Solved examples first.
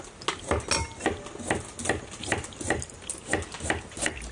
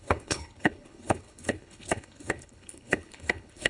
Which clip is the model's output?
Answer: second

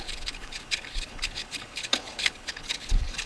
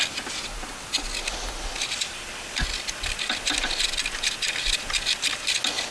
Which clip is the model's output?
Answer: first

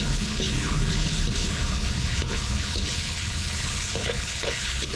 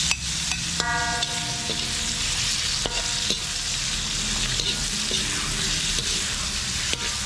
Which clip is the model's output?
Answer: first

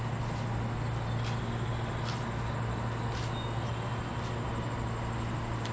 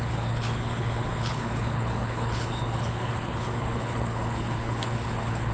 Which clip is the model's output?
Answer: second